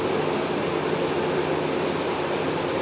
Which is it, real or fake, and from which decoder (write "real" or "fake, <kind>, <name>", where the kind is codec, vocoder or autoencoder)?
real